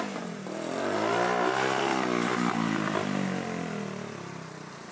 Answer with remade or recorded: recorded